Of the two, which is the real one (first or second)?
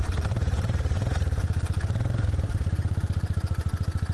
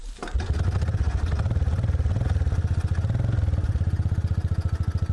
second